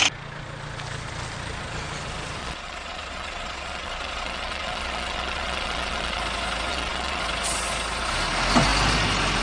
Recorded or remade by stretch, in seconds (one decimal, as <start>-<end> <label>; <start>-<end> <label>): 0.0-2.4 recorded; 2.4-6.2 remade; 6.2-6.7 recorded; 6.7-7.2 remade; 7.2-9.4 recorded